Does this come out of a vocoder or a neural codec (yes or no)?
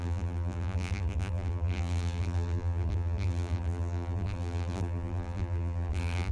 yes